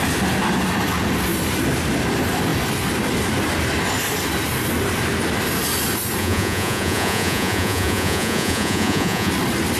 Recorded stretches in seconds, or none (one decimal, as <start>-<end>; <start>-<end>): 0.0-6.2; 9.3-9.8

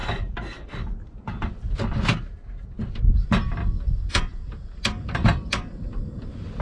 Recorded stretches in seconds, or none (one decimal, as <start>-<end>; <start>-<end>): 0.0-6.6

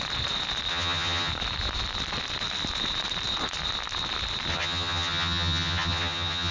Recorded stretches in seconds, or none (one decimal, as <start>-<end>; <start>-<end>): 0.0-0.7; 1.3-4.5

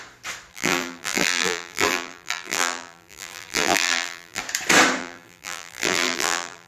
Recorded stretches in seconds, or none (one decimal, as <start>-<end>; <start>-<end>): 0.0-0.5; 4.4-5.0

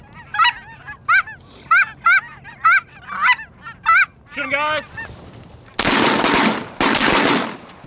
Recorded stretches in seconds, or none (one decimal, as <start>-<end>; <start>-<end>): 0.0-7.9

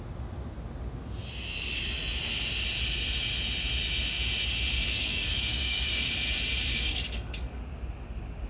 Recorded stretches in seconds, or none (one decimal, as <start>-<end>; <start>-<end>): 0.0-4.9; 6.1-6.7; 7.6-8.5